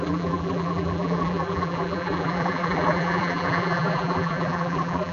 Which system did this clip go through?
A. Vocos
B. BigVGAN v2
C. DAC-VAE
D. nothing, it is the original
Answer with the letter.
B